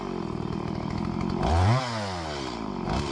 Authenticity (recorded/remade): recorded